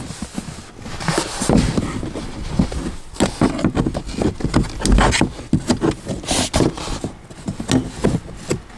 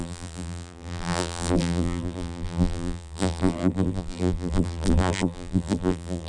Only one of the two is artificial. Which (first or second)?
second